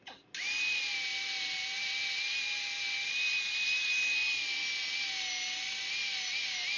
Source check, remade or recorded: recorded